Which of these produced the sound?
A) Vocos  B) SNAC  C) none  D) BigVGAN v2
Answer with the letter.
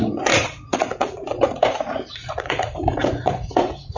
A